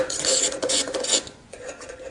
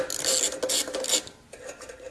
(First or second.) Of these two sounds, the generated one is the first